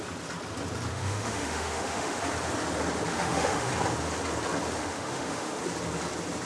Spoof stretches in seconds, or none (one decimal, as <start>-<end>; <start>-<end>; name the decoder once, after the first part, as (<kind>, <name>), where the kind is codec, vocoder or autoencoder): 0.9-2.2 (autoencoder, DAC-VAE); 3.1-3.7; 4.8-5.6